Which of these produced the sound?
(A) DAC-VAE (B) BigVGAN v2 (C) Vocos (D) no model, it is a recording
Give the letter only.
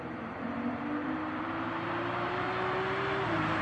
B